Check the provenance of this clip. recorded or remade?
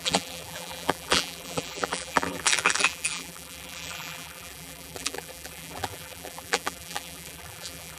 remade